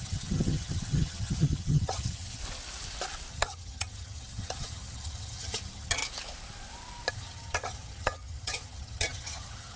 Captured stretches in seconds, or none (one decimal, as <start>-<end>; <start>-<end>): 2.4-3.3; 6.0-7.1